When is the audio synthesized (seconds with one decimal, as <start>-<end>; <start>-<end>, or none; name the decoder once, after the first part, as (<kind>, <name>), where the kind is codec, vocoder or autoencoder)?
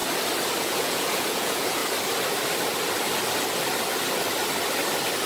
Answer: 0.6-1.8 (vocoder, Vocos)